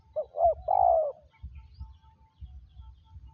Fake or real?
real